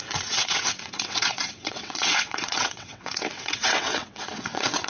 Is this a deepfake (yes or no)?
yes